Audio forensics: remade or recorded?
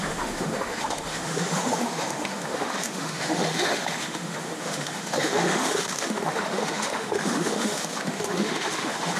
remade